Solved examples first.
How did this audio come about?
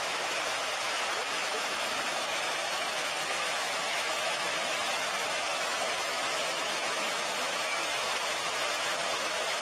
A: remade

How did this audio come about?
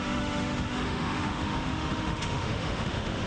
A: remade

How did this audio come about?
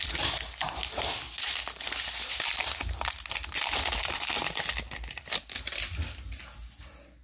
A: recorded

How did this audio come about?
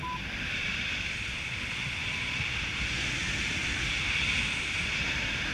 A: recorded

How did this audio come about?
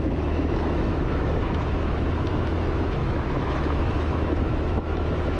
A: remade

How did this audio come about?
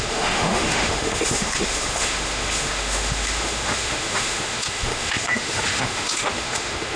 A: remade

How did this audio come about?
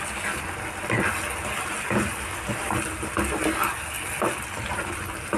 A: recorded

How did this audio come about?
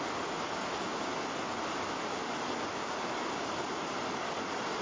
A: recorded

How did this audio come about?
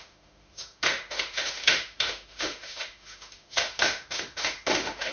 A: remade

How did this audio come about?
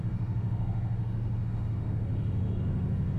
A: remade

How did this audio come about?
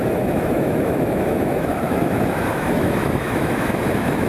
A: remade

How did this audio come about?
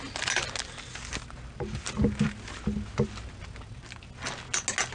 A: recorded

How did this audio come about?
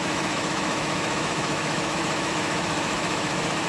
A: remade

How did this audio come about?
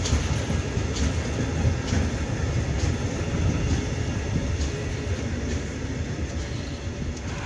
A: recorded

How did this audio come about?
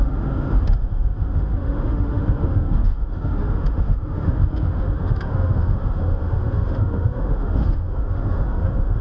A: remade